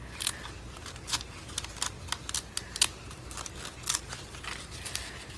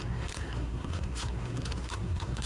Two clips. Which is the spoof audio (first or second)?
second